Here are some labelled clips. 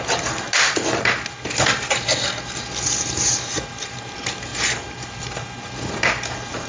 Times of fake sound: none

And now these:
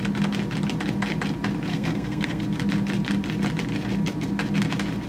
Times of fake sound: 1.7-2.4 (codec, SNAC)

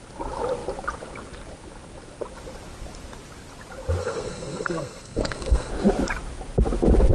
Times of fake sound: 4.0-5.7 (codec, SNAC)